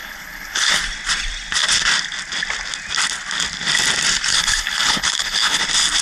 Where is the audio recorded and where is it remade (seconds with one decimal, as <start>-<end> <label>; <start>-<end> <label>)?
0.0-0.8 remade; 0.8-4.3 recorded; 4.3-5.6 remade; 5.6-6.0 recorded